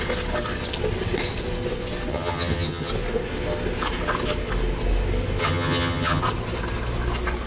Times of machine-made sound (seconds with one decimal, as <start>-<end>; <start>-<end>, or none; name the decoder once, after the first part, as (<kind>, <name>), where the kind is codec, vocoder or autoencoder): 2.1-2.9 (vocoder, HiFi-GAN); 5.4-6.2